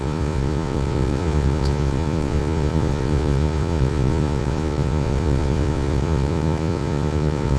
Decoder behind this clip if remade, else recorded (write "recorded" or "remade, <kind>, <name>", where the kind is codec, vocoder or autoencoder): remade, vocoder, Vocos